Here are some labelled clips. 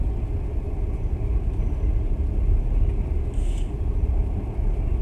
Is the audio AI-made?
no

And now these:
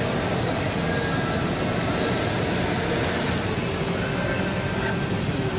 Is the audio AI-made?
no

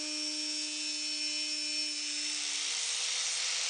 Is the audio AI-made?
no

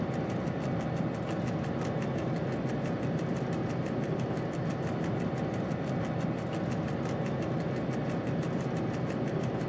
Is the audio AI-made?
no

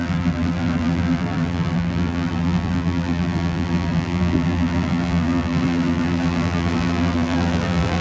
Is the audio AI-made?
yes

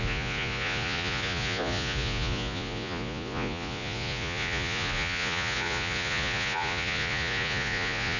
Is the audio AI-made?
yes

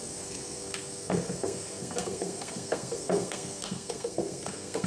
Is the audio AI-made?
yes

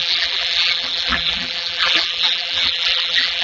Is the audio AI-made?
yes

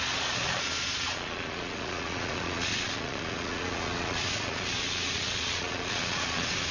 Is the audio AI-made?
yes